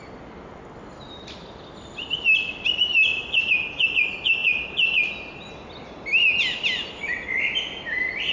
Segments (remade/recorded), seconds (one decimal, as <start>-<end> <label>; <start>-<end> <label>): 0.0-8.3 recorded